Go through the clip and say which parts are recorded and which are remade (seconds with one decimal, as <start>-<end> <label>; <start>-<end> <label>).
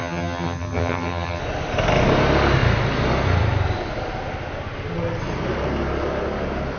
0.0-1.4 remade; 1.4-6.8 recorded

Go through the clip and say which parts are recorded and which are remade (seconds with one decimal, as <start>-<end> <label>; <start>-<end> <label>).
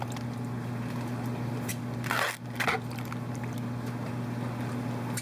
0.0-5.2 recorded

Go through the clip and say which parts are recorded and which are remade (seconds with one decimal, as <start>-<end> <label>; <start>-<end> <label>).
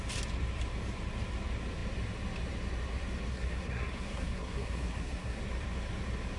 0.0-3.3 recorded; 3.3-5.4 remade; 5.4-6.4 recorded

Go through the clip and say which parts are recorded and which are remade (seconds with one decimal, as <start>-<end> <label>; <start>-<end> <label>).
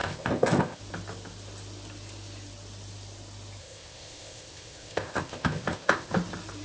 0.0-0.8 remade; 0.8-3.6 recorded; 3.6-6.1 remade; 6.1-6.6 recorded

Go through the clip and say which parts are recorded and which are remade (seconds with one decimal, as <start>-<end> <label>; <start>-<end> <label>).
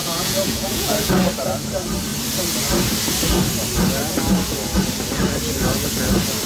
0.0-1.1 remade; 1.1-6.5 recorded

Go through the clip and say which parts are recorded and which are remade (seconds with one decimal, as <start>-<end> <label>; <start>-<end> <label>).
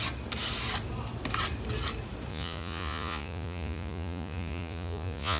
0.0-2.3 recorded; 2.3-5.4 remade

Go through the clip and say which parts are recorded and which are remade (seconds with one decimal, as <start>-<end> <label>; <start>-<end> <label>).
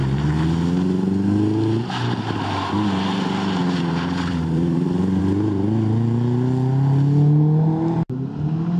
0.0-3.6 recorded; 3.6-5.2 remade; 5.2-8.8 recorded